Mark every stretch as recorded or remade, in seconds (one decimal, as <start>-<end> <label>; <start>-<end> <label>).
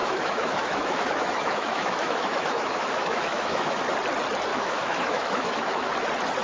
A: 0.0-3.8 remade; 3.8-4.5 recorded; 4.5-5.9 remade; 5.9-6.4 recorded